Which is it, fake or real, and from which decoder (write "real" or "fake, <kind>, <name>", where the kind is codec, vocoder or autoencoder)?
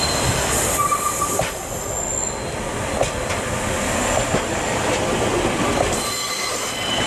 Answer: real